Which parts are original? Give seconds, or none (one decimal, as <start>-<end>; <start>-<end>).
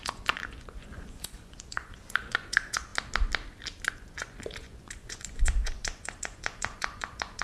2.9-3.9